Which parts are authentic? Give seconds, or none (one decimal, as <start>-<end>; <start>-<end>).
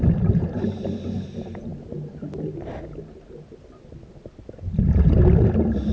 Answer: 0.0-5.9